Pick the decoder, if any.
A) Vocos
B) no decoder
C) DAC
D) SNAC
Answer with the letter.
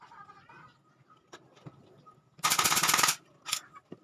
B